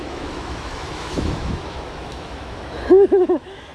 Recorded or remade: remade